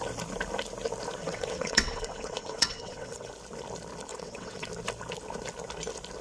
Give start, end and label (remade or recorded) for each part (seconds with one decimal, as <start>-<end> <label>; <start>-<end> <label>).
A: 0.0-1.2 recorded; 1.2-3.3 remade; 3.3-4.1 recorded; 4.1-4.7 remade; 4.7-6.2 recorded